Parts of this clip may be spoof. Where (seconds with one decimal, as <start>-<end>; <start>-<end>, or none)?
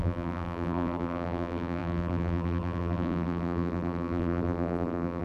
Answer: 0.0-5.2